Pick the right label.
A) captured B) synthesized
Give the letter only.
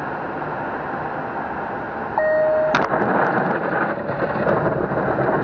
A